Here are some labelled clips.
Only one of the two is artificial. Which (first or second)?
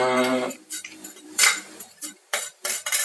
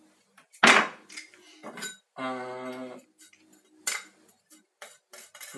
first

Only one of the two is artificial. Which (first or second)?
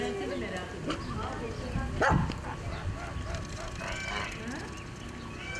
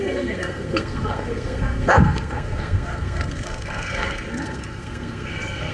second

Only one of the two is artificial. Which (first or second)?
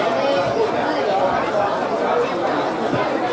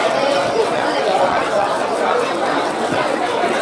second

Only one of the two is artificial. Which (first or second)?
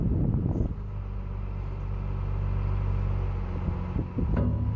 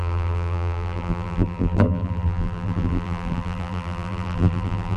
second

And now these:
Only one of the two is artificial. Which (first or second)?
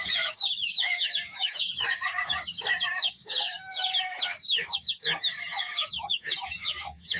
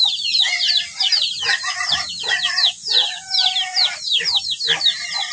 first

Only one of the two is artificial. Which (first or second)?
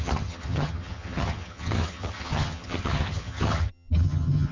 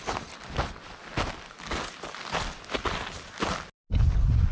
first